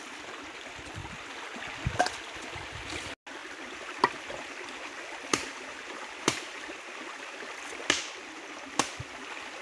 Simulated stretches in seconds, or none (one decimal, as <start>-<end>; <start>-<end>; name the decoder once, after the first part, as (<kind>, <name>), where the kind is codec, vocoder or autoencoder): 5.3-6.7 (vocoder, BigVGAN v2)